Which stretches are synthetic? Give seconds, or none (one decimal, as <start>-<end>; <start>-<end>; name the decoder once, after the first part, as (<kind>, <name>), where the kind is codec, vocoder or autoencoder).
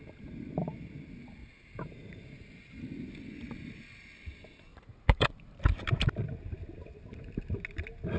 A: 1.4-2.2 (vocoder, Vocos); 4.7-5.3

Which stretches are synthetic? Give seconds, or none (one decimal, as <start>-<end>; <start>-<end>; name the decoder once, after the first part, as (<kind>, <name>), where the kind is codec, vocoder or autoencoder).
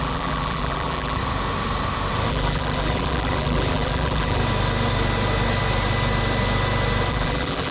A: 0.0-1.2 (vocoder, BigVGAN v2); 2.3-4.4; 7.1-7.7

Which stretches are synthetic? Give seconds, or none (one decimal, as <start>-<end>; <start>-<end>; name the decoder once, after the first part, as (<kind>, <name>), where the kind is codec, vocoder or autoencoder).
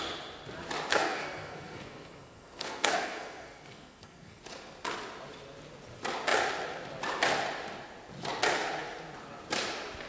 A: 0.9-4.4 (codec, SNAC)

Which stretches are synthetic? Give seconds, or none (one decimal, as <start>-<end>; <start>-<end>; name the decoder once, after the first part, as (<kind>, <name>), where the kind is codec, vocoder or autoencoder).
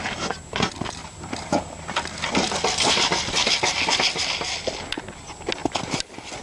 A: 1.0-2.3 (vocoder, BigVGAN v2); 5.6-6.4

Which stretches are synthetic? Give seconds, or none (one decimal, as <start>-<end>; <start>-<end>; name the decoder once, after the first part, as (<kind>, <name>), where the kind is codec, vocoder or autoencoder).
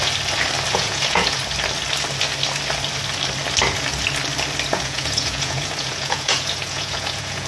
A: 0.7-1.4 (vocoder, Vocos); 4.7-7.5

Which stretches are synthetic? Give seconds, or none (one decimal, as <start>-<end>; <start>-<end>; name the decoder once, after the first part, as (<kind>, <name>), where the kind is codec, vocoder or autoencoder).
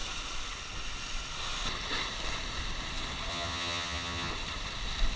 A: 3.3-4.3 (vocoder, HiFi-GAN)